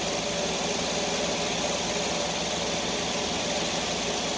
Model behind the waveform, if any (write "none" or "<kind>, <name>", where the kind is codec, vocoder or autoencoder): none